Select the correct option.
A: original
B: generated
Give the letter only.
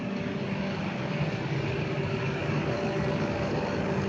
B